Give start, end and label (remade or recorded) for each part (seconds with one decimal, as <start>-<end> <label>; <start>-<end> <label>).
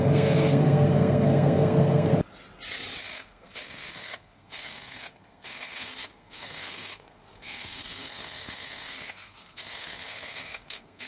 0.0-2.1 remade; 2.1-3.0 recorded; 3.0-11.1 remade